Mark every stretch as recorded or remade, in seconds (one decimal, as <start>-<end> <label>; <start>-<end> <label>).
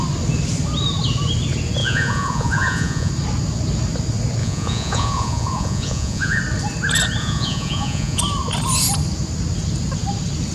0.0-1.8 recorded; 1.8-3.1 remade; 3.1-4.4 recorded; 4.4-6.4 remade; 6.4-7.2 recorded; 7.2-8.2 remade; 8.2-10.5 recorded